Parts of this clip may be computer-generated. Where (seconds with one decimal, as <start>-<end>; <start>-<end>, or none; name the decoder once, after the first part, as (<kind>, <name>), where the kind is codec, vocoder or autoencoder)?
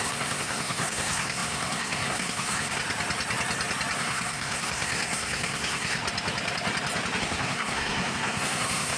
0.0-2.8 (codec, SNAC); 4.0-6.0; 7.2-9.0